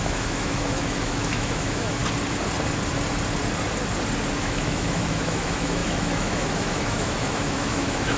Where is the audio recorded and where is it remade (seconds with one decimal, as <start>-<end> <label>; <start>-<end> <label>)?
0.0-2.0 remade; 2.0-4.4 recorded; 4.4-8.2 remade